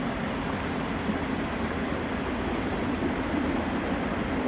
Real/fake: real